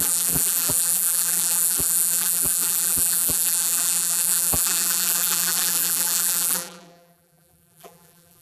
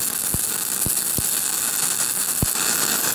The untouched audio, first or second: second